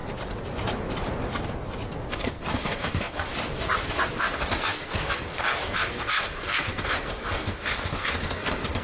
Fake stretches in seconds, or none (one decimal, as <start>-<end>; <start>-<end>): 2.1-3.3; 4.2-8.8

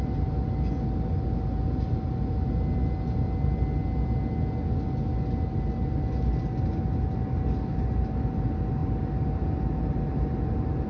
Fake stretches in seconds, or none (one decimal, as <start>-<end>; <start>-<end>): none

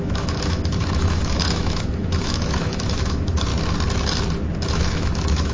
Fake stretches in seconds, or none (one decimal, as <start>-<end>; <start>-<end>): 0.0-3.5; 4.7-5.5

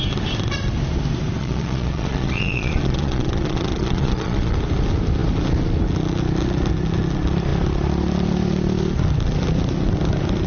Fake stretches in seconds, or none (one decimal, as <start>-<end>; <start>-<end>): 1.4-4.5

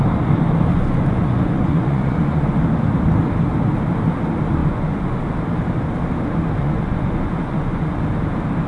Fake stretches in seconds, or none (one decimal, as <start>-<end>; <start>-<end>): 0.7-2.6; 4.6-5.2; 6.6-8.0

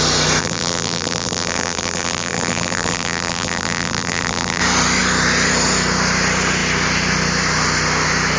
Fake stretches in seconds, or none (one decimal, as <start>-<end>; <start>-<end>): 0.4-4.6